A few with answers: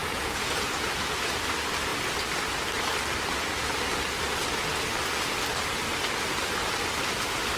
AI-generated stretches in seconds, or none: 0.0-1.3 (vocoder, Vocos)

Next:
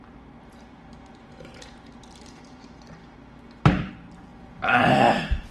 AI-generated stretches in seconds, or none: 0.0-3.0 (vocoder, BigVGAN v2); 3.9-4.3; 4.8-5.5

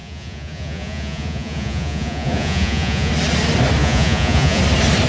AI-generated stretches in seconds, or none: 0.0-3.1 (vocoder, Vocos); 3.8-4.6